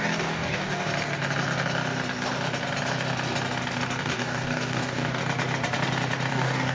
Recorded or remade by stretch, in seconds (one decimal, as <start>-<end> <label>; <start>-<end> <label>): 0.0-0.9 remade; 0.9-4.0 recorded; 4.0-5.2 remade; 5.2-6.3 recorded; 6.3-6.7 remade